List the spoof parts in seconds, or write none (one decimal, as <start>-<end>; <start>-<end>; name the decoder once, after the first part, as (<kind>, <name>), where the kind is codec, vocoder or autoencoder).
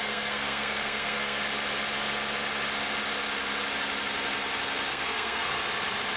0.0-1.4 (codec, SNAC); 4.9-5.6